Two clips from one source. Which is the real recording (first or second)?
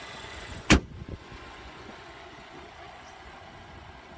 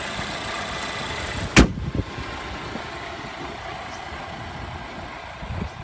second